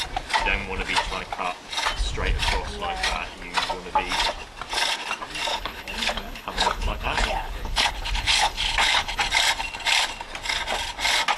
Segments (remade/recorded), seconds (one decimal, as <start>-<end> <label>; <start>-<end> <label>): 0.0-5.5 recorded; 5.5-9.2 remade; 9.2-11.4 recorded